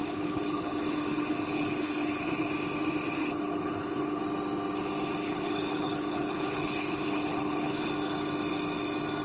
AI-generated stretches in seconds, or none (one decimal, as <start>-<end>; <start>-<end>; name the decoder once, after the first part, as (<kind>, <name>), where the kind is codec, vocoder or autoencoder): 0.0-2.5 (codec, HILCodec); 3.2-4.2; 5.2-7.9